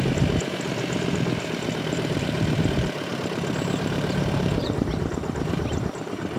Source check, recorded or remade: remade